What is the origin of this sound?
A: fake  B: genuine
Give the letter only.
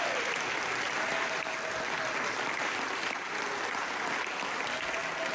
B